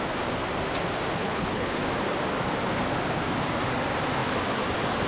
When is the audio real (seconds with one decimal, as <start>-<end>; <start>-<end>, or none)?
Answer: 0.0-1.2; 1.8-5.1